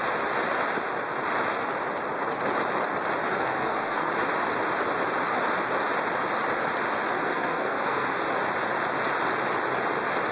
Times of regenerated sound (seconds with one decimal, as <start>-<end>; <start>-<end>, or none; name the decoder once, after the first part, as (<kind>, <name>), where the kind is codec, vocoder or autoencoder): 3.3-4.1 (codec, SNAC); 7.1-8.2